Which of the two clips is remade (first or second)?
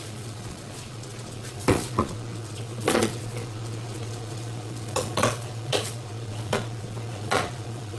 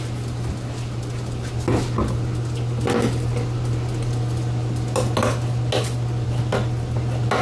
first